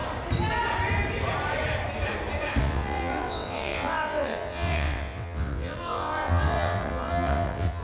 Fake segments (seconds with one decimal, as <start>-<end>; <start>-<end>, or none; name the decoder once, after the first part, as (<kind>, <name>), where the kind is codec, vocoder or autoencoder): 2.6-7.8 (vocoder, WaveNeXt)